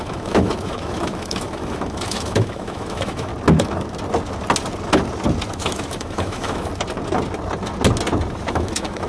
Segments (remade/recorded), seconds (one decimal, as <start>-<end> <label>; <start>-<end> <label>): 0.0-3.3 remade; 3.3-5.5 recorded; 5.5-6.7 remade; 6.7-8.5 recorded; 8.5-9.1 remade